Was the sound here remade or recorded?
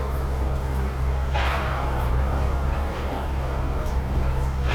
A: remade